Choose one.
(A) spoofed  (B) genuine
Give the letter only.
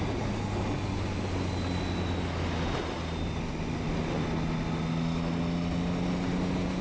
B